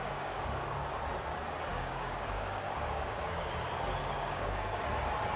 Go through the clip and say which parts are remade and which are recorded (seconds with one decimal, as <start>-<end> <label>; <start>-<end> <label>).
0.0-0.9 remade; 0.9-1.7 recorded; 1.7-3.5 remade; 3.5-4.0 recorded; 4.0-4.8 remade; 4.8-5.4 recorded